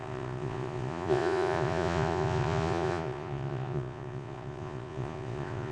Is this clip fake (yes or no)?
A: yes